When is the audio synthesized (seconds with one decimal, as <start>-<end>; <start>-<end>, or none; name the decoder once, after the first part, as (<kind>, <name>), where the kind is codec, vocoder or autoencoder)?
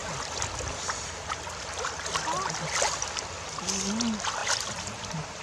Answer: none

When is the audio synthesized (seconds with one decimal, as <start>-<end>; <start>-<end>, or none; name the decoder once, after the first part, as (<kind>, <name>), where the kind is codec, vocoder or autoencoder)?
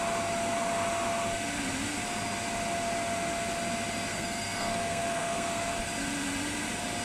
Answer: 4.1-5.7 (codec, SNAC)